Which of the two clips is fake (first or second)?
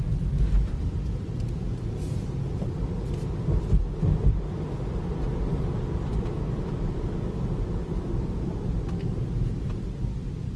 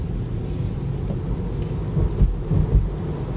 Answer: first